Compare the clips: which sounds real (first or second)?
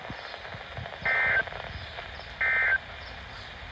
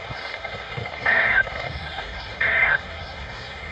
first